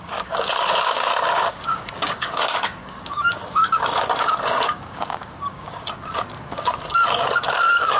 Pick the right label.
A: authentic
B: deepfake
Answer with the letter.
B